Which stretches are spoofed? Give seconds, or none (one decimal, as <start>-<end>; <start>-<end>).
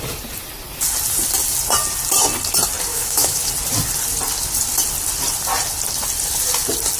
2.9-3.5